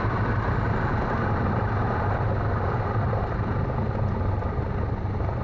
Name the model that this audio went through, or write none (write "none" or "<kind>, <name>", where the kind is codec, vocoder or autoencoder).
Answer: none